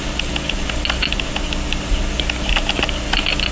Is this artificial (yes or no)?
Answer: no